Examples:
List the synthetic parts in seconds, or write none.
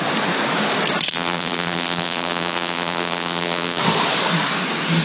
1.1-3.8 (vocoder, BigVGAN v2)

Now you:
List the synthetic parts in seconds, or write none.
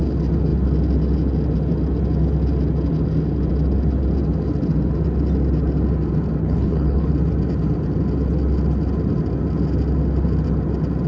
6.4-7.1 (codec, HILCodec)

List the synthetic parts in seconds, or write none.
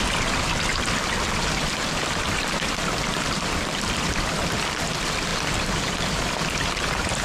0.0-7.2 (vocoder, BigVGAN v2)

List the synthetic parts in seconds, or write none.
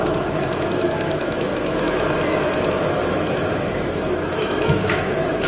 0.0-5.5 (autoencoder, DAC-VAE)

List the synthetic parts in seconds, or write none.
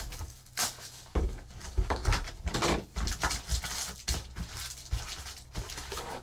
0.0-0.4 (codec, DAC); 0.9-2.0; 5.7-6.2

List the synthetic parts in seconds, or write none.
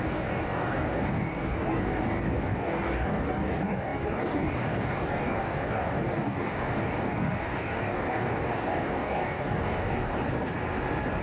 0.0-10.1 (codec, DAC)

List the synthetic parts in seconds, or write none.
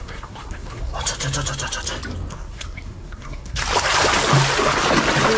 0.0-0.9 (codec, SNAC); 2.3-3.6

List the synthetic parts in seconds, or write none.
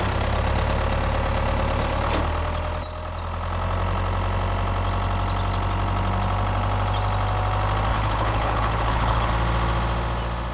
7.9-9.3 (codec, HILCodec)